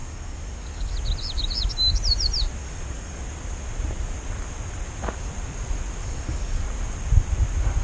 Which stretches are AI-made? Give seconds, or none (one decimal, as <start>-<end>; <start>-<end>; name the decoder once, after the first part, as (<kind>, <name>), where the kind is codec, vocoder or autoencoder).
0.0-0.9 (codec, DAC); 2.6-3.2; 6.0-6.6